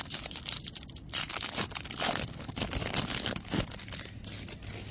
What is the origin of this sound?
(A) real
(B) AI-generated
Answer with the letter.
A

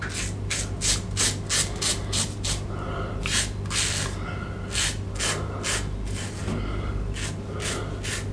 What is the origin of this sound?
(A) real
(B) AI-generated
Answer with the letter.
A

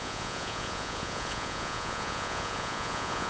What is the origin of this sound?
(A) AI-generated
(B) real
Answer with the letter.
A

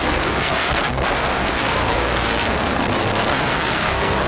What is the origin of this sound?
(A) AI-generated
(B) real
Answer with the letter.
A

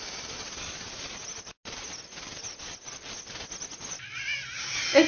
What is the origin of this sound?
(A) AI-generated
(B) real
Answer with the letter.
B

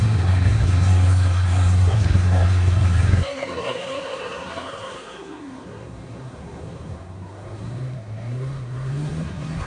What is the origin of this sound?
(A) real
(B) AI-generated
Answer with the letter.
B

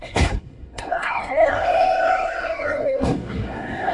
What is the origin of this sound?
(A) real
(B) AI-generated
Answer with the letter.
B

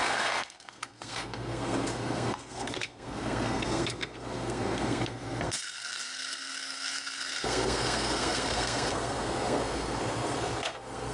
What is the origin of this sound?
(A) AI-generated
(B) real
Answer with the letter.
A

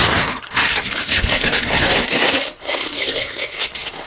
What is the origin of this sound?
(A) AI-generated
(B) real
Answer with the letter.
A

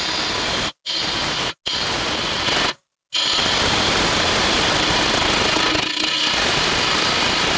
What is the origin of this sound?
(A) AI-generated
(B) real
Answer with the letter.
B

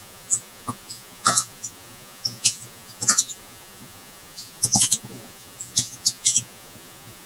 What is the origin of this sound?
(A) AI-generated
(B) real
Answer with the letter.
A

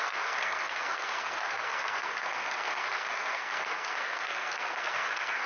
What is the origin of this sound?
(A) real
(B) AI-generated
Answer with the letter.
B